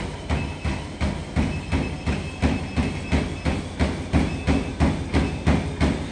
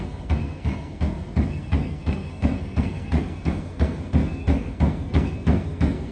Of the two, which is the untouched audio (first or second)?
first